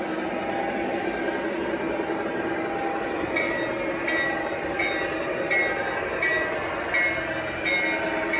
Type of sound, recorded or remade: recorded